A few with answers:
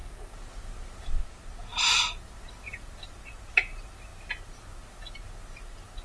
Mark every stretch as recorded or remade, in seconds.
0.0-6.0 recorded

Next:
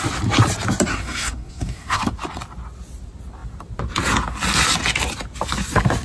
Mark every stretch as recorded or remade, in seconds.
0.0-0.9 recorded; 0.9-2.0 remade; 2.0-6.0 recorded

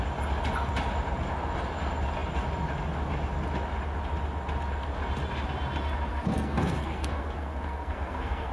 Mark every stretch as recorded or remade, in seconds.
0.0-6.1 recorded; 6.1-8.5 remade

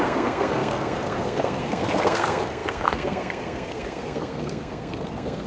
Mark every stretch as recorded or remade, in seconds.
0.0-5.5 remade

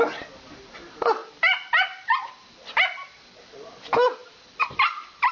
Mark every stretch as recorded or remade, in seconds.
0.0-5.3 recorded

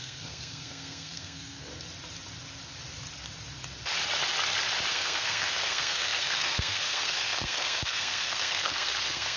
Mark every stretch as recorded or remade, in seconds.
0.0-1.7 remade; 1.7-4.9 recorded; 4.9-9.4 remade